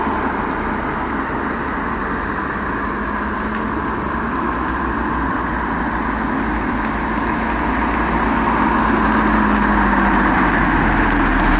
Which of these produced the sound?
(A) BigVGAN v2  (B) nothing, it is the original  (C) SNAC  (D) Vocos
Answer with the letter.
B